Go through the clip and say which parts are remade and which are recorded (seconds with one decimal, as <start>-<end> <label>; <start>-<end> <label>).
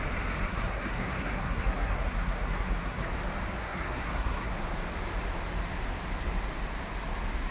0.0-0.5 recorded; 0.5-3.1 remade; 3.1-3.6 recorded; 3.6-4.5 remade; 4.5-7.5 recorded